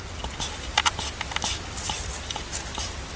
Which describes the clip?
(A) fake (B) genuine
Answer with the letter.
B